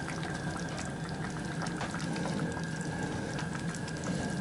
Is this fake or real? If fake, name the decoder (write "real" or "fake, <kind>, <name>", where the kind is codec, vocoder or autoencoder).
real